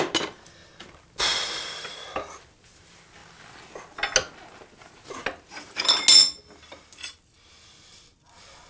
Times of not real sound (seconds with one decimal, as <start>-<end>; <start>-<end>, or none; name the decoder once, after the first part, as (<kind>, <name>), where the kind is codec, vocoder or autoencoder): none